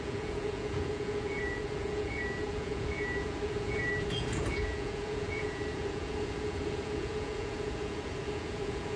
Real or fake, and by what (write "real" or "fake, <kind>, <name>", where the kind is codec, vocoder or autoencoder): fake, vocoder, Vocos